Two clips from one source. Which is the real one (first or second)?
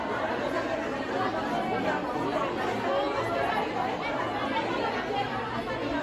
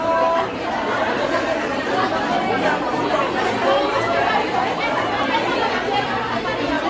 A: first